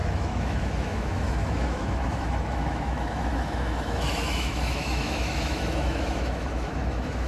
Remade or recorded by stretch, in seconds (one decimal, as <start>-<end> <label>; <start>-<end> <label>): 0.0-7.3 remade